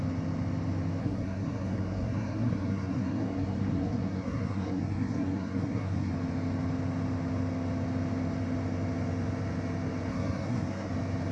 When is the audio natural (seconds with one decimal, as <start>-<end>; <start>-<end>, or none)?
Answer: 0.0-1.0; 6.1-10.1; 10.9-11.3